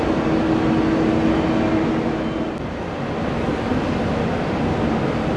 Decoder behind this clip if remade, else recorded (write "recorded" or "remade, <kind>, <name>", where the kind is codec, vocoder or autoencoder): recorded